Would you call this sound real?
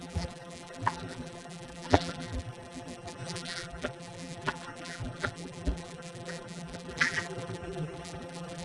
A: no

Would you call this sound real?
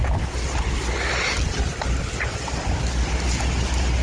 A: yes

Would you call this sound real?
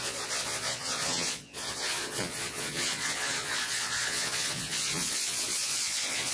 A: no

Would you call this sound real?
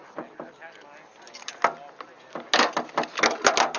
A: yes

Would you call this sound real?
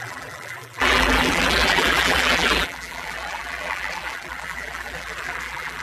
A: no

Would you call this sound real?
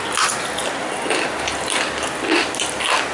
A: yes